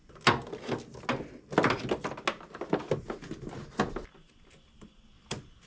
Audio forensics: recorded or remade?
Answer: recorded